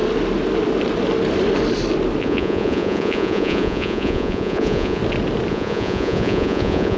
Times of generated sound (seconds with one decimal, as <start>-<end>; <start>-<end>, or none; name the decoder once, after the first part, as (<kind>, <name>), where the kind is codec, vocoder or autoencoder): 2.2-5.0 (vocoder, Vocos); 5.5-7.0